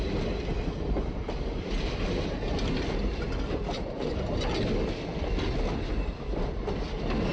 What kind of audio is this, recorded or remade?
recorded